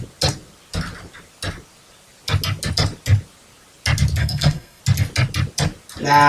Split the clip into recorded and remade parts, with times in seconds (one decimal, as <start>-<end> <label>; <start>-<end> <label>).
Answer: 0.0-4.2 recorded; 4.2-4.8 remade; 4.8-6.3 recorded